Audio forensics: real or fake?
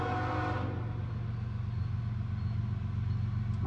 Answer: real